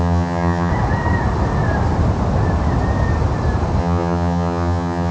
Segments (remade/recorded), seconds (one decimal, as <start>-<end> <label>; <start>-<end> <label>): 0.0-0.7 remade; 0.7-3.8 recorded; 3.8-5.1 remade